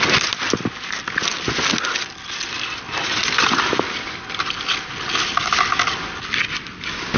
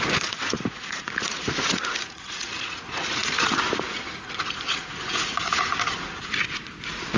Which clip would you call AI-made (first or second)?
second